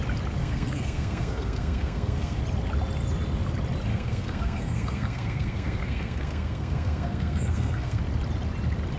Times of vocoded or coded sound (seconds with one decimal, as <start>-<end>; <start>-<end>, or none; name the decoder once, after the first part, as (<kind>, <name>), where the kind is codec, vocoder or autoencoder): 0.4-2.4 (codec, SNAC); 3.9-8.0